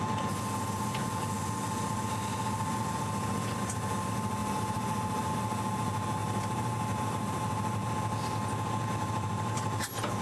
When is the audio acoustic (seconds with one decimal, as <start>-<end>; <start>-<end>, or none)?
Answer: 0.0-4.4; 5.3-6.2; 7.9-10.2